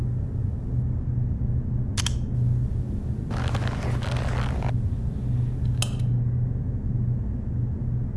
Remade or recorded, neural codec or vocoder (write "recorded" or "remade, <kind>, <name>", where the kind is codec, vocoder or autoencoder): recorded